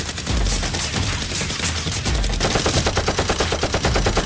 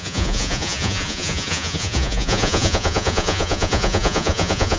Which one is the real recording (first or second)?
first